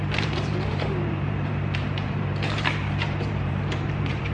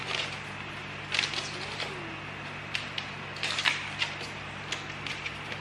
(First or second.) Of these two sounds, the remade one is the first